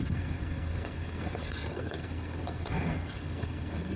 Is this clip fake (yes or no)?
yes